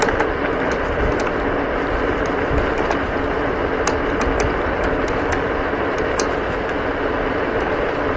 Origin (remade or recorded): recorded